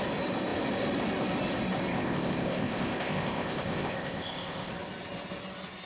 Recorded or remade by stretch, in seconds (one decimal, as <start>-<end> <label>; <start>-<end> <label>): 0.0-1.9 recorded; 1.9-4.7 remade; 4.7-5.9 recorded